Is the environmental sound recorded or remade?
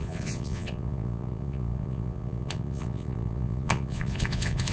remade